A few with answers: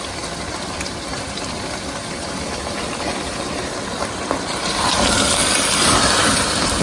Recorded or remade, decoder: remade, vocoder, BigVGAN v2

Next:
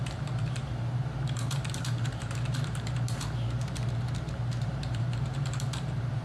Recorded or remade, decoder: remade, vocoder, BigVGAN v2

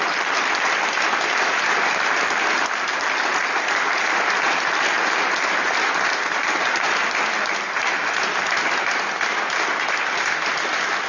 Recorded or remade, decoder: remade, vocoder, BigVGAN v2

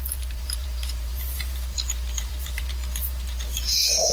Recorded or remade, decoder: remade, vocoder, BigVGAN v2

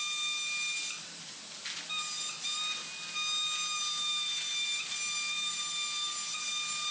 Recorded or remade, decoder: recorded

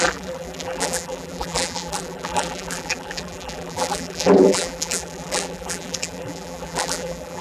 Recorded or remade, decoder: remade, vocoder, BigVGAN v2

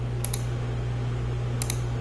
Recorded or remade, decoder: recorded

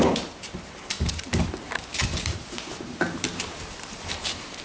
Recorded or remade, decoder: remade, vocoder, BigVGAN v2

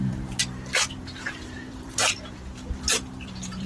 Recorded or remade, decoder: remade, vocoder, BigVGAN v2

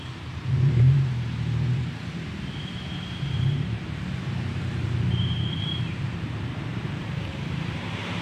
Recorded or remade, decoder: remade, vocoder, BigVGAN v2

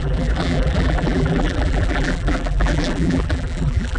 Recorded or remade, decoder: remade, vocoder, BigVGAN v2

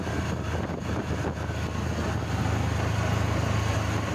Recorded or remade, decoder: recorded